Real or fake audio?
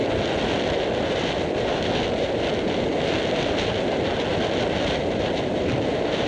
real